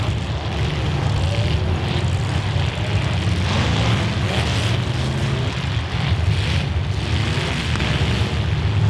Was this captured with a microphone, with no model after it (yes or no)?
yes